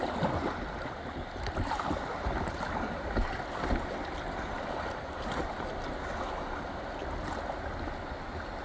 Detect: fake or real real